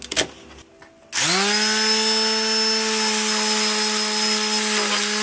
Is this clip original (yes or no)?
yes